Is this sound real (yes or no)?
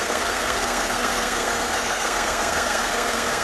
no